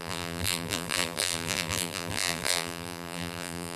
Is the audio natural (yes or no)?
no